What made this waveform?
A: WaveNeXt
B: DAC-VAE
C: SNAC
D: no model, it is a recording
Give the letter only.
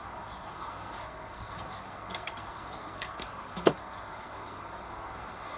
C